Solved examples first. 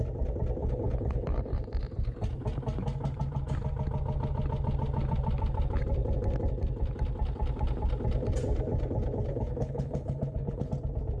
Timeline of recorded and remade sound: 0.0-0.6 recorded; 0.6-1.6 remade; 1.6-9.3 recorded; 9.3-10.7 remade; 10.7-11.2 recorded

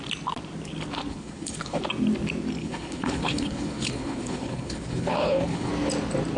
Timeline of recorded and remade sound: 0.0-1.1 recorded; 1.1-1.8 remade; 1.8-2.6 recorded; 2.6-5.7 remade; 5.7-6.4 recorded

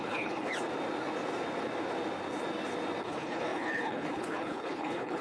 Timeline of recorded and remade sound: 0.0-0.5 remade; 0.5-3.0 recorded; 3.0-5.2 remade

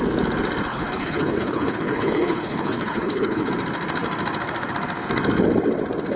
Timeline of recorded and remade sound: 0.0-0.7 recorded; 0.7-3.5 remade; 3.5-6.2 recorded

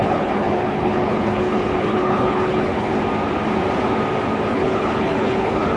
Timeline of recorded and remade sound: 0.0-2.9 remade; 2.9-4.5 recorded; 4.5-5.8 remade

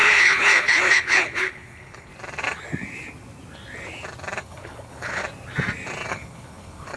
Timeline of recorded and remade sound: 0.0-2.1 remade; 2.1-4.4 recorded; 4.4-5.2 remade; 5.2-6.1 recorded; 6.1-7.0 remade